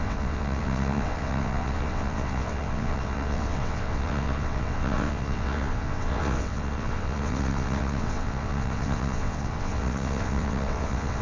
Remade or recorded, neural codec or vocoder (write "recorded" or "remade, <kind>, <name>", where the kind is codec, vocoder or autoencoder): remade, vocoder, WaveNeXt